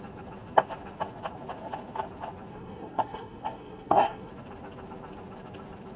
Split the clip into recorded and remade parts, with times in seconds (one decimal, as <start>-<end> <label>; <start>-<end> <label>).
0.0-2.5 recorded; 2.5-4.3 remade; 4.3-6.0 recorded